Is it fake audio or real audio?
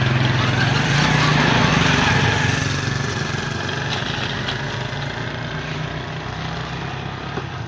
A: real